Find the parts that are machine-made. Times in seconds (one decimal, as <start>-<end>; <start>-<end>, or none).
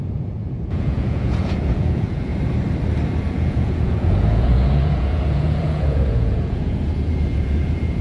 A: 0.0-2.3; 3.2-8.0